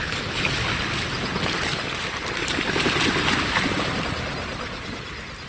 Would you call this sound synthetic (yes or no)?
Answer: no